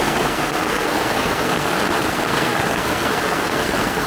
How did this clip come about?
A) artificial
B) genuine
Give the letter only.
A